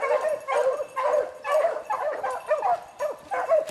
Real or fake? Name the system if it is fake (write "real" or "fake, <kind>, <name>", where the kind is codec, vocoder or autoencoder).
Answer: real